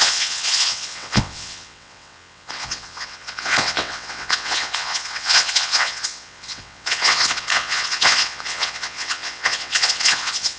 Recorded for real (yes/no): no